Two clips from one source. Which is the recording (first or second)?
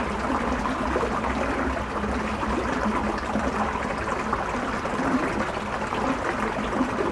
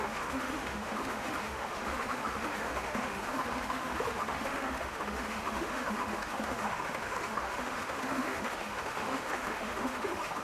first